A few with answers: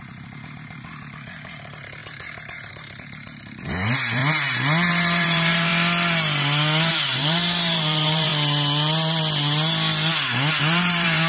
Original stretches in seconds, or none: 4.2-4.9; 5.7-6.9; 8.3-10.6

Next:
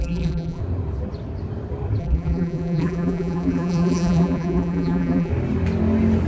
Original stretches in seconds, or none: 0.6-2.0; 5.3-6.3

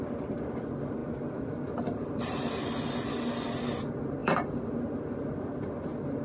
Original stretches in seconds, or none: 0.0-1.0; 2.6-4.2; 5.3-6.2

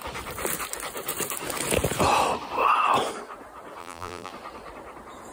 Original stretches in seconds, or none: 0.0-3.8; 4.3-5.3